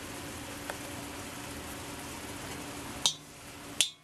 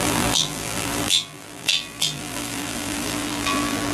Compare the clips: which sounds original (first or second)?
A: first